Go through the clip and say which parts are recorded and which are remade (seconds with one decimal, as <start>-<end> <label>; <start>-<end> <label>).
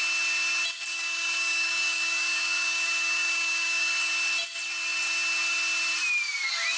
0.0-0.9 recorded; 0.9-4.1 remade; 4.1-6.8 recorded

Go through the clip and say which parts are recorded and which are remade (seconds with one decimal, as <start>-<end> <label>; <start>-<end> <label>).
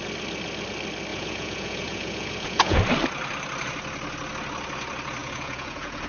0.0-1.1 recorded; 1.1-2.8 remade; 2.8-5.2 recorded; 5.2-6.1 remade